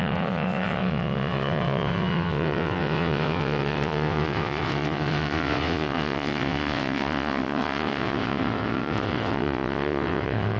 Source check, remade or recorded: remade